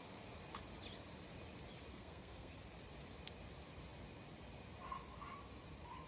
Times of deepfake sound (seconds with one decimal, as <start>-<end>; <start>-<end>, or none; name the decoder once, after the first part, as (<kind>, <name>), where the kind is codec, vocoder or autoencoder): 1.9-2.5 (codec, SNAC)